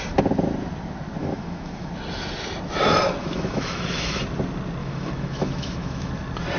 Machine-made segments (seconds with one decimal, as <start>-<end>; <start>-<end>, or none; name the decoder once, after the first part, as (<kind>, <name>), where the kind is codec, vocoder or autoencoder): 1.2-1.9 (autoencoder, DAC-VAE); 3.2-4.2; 4.8-6.1